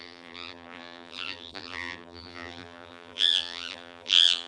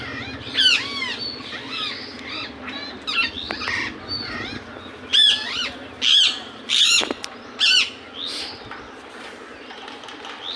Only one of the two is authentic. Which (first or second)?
second